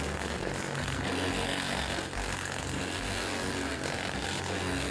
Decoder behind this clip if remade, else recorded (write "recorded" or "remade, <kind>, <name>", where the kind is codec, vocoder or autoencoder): remade, codec, SNAC